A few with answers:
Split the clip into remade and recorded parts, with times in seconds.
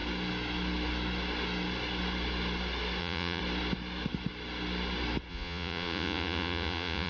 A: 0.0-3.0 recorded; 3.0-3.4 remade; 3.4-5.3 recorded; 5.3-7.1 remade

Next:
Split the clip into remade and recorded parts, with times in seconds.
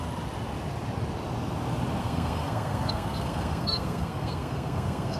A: 0.0-2.0 recorded; 2.0-5.2 remade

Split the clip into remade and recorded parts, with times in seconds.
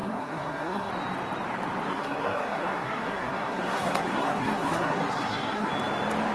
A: 0.0-0.9 remade; 0.9-1.9 recorded; 1.9-5.7 remade; 5.7-6.3 recorded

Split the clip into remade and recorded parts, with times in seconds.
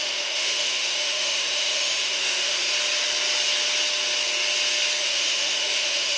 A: 0.0-2.7 remade; 2.7-5.0 recorded; 5.0-6.2 remade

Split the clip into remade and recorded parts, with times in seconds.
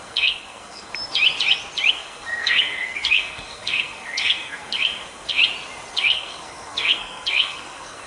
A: 0.0-0.9 remade; 0.9-1.9 recorded; 1.9-5.4 remade; 5.4-5.9 recorded; 5.9-8.1 remade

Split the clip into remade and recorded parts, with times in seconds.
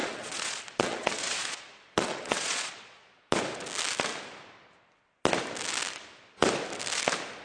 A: 0.0-3.3 remade; 3.3-7.4 recorded